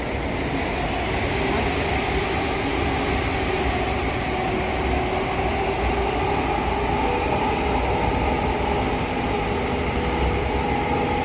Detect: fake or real real